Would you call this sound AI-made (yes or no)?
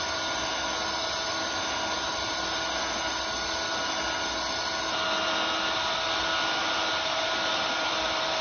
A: no